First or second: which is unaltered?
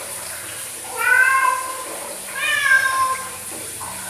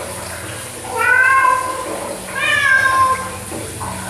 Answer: second